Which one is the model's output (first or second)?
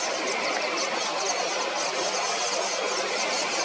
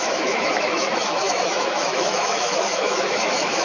second